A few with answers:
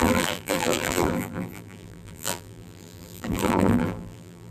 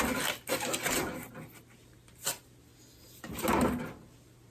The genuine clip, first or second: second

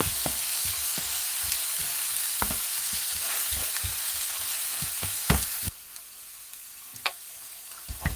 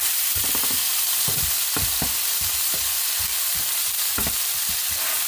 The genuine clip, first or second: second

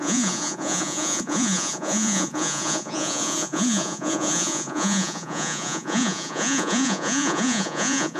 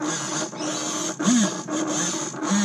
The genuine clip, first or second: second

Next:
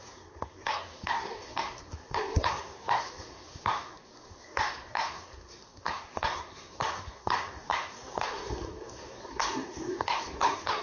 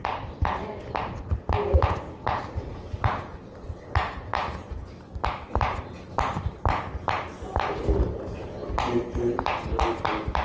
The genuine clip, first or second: second